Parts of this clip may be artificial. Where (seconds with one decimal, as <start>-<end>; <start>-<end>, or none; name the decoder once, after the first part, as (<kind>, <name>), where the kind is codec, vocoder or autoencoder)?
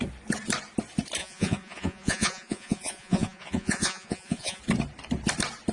1.2-4.6 (vocoder, Vocos)